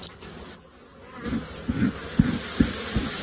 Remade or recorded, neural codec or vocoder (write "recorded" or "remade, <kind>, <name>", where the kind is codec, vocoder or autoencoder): recorded